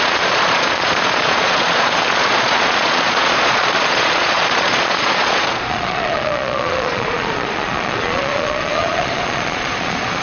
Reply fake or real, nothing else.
fake